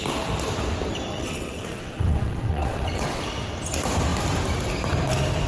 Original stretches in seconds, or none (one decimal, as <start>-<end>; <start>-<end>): 0.0-1.1; 3.2-5.5